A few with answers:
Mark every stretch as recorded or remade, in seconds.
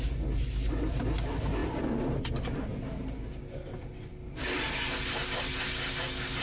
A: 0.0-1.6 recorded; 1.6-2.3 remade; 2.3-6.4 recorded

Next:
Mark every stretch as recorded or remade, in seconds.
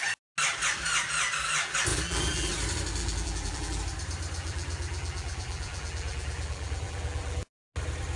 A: 0.0-1.9 recorded; 1.9-2.5 remade; 2.5-3.0 recorded; 3.0-3.8 remade; 3.8-4.4 recorded; 4.4-7.5 remade; 7.5-8.2 recorded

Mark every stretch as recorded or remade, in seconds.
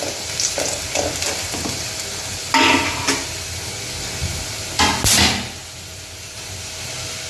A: 0.0-5.9 recorded; 5.9-6.5 remade; 6.5-7.3 recorded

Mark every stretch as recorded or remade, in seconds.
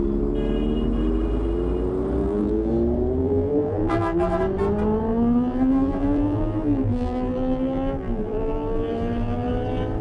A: 0.0-2.2 recorded; 2.2-2.7 remade; 2.7-3.2 recorded; 3.2-4.4 remade; 4.4-5.1 recorded; 5.1-9.5 remade; 9.5-10.0 recorded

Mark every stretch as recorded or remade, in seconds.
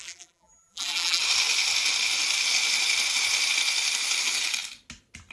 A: 0.0-1.2 remade; 1.2-5.3 recorded